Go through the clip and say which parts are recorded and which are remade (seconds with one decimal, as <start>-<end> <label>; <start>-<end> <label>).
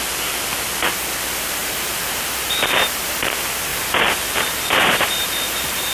0.0-1.6 recorded; 1.6-3.0 remade; 3.0-3.7 recorded; 3.7-5.9 remade